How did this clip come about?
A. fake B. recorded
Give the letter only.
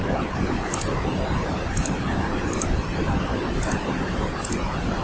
B